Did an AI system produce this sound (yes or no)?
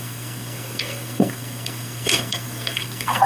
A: yes